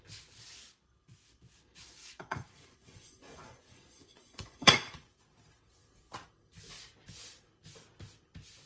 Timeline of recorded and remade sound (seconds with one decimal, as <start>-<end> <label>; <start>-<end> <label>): 0.0-2.0 recorded; 2.0-5.2 remade; 5.2-8.7 recorded